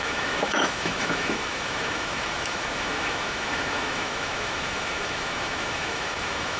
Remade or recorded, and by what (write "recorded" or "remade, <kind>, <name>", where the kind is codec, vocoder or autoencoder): remade, autoencoder, DAC-VAE